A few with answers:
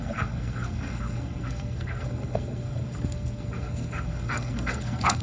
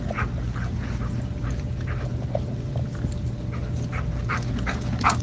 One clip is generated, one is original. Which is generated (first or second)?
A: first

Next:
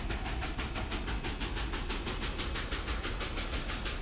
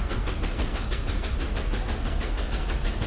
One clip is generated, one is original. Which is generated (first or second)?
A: second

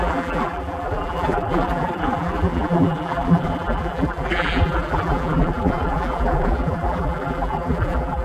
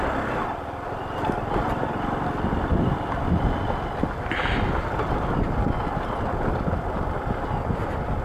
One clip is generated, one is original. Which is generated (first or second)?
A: first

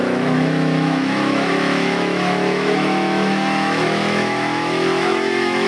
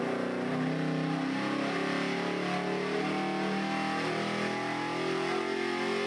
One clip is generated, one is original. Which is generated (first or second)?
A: first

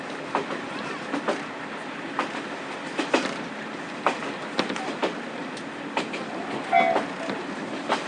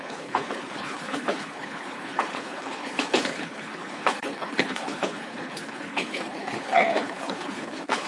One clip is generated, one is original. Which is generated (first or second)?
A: second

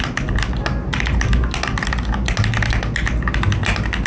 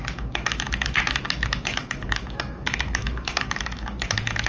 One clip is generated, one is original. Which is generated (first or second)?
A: second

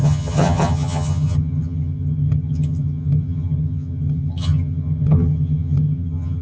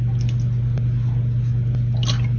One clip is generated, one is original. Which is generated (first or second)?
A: first